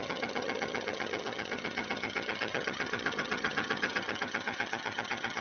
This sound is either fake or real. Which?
fake